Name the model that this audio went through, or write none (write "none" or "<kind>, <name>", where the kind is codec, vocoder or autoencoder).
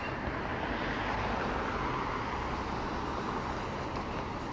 none